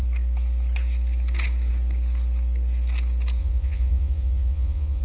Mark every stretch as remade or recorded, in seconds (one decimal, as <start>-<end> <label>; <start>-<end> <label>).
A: 0.0-3.4 recorded; 3.4-5.0 remade